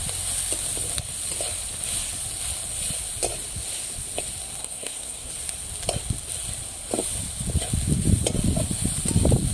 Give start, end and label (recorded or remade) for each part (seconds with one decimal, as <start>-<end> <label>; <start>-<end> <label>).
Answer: 0.0-4.6 recorded; 4.6-5.3 remade; 5.3-9.5 recorded